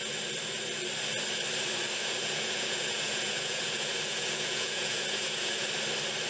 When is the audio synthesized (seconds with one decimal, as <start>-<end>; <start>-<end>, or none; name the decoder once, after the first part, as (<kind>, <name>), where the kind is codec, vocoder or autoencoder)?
2.0-5.7 (vocoder, Vocos)

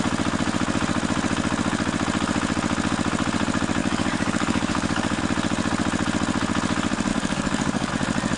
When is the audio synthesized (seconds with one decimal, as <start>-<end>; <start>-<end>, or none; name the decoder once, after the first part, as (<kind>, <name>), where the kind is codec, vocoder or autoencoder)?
3.8-5.2 (codec, DAC); 7.1-7.9

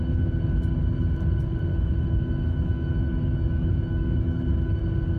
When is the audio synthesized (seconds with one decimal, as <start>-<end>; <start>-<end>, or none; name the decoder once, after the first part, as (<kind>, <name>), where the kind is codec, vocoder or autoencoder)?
1.7-4.8 (autoencoder, DAC-VAE)

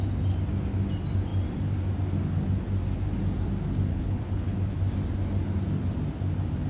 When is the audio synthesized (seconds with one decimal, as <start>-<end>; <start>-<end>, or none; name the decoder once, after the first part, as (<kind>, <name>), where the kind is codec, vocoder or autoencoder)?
3.9-4.8 (codec, HILCodec)

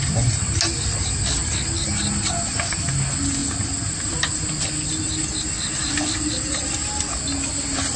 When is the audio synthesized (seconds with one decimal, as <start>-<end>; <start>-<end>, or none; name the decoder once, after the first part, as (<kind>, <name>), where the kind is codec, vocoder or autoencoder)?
none

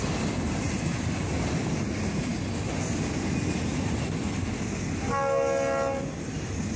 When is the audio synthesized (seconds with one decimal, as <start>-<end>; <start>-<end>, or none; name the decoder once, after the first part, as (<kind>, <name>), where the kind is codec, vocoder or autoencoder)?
none

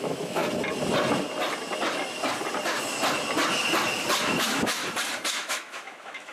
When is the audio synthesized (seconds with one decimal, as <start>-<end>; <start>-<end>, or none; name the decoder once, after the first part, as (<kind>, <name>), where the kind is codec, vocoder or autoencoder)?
0.0-0.4 (autoencoder, DAC-VAE); 4.2-4.8; 5.3-6.3